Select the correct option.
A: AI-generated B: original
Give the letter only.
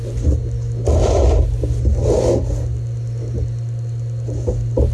B